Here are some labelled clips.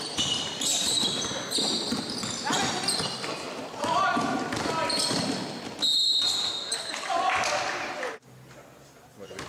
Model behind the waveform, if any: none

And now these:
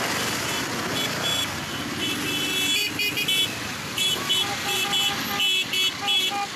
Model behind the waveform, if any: none